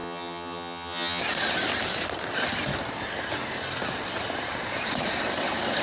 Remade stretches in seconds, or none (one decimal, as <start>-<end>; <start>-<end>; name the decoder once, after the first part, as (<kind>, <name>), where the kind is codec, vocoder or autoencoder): 0.0-1.2 (vocoder, HiFi-GAN)